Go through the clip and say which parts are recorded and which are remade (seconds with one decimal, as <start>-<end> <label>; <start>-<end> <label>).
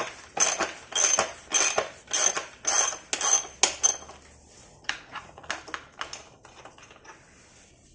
0.0-4.6 recorded; 4.6-5.5 remade; 5.5-7.9 recorded